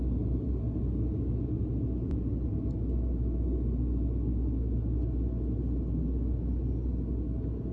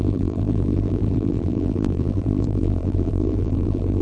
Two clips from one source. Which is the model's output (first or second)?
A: second